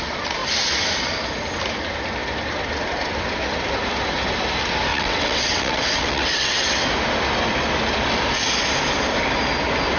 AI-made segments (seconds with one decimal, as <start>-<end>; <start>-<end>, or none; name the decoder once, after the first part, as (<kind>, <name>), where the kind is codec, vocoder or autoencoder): 4.9-6.8 (vocoder, WaveNeXt)